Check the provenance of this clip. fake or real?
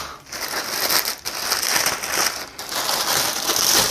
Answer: real